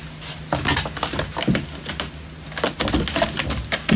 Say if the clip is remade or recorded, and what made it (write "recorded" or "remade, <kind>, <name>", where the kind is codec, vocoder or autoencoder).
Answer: recorded